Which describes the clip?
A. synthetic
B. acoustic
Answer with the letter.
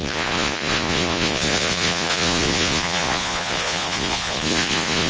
A